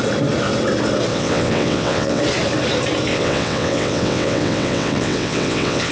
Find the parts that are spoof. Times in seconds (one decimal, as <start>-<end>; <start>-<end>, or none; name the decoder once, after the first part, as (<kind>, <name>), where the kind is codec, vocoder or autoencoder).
1.1-2.2 (vocoder, WaveNeXt); 3.1-5.9